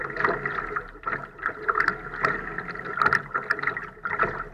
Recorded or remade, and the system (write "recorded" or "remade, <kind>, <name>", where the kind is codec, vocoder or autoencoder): recorded